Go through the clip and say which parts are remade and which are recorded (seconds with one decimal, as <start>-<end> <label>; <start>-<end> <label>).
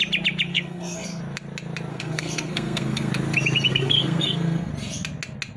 0.0-0.5 recorded; 0.5-1.2 remade; 1.2-1.9 recorded; 1.9-3.1 remade; 3.1-3.7 recorded; 3.7-4.7 remade; 4.7-5.6 recorded